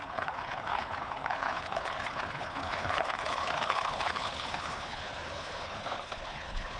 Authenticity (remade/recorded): remade